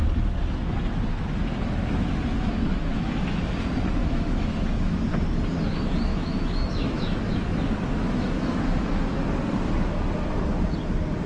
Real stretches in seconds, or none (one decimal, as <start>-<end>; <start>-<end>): 0.0-2.7; 3.4-4.0; 5.0-6.1; 9.0-11.3